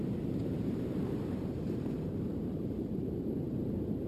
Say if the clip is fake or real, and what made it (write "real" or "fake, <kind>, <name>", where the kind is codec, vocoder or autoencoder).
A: fake, vocoder, BigVGAN v2